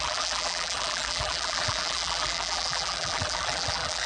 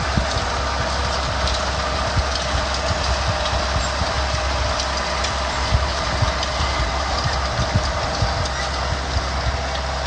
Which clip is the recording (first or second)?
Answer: second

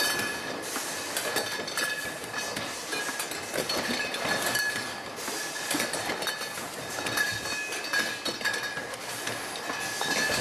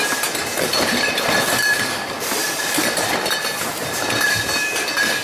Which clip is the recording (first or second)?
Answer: first